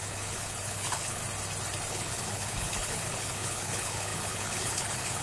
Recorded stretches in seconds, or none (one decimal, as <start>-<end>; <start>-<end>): 1.2-1.9